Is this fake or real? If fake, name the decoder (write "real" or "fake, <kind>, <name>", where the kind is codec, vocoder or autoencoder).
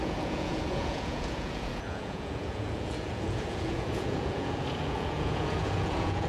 fake, vocoder, Vocos